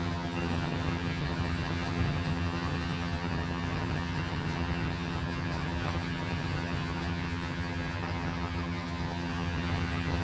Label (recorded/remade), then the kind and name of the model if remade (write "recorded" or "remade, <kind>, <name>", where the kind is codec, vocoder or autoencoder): remade, vocoder, HiFi-GAN